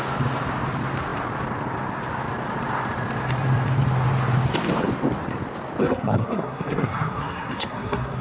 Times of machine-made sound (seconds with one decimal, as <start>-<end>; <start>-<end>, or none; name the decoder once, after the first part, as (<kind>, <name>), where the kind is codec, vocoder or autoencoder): 5.8-8.2 (codec, SNAC)